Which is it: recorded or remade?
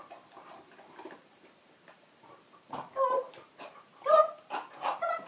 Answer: remade